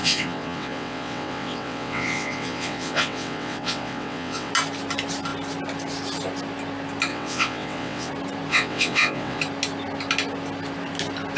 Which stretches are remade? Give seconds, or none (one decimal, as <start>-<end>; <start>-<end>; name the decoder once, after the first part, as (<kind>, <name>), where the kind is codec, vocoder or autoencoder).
0.0-4.5 (vocoder, WaveNeXt); 7.1-8.1; 8.5-9.4